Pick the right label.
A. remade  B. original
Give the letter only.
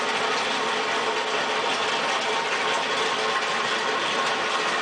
B